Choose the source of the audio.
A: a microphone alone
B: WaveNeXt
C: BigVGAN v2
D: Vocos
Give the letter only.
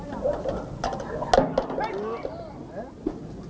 A